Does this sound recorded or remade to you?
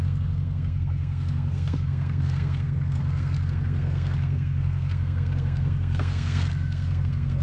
remade